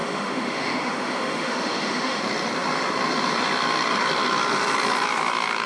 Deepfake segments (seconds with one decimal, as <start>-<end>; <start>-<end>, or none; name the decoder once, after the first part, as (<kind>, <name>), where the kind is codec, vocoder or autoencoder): 0.0-2.2 (autoencoder, DAC-VAE)